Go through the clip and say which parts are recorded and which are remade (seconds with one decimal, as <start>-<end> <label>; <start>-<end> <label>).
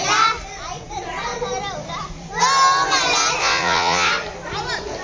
0.0-3.4 recorded; 3.4-4.1 remade; 4.1-5.0 recorded